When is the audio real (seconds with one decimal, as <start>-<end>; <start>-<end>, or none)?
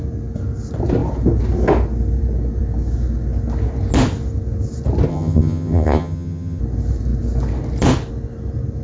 0.0-5.1; 6.6-8.8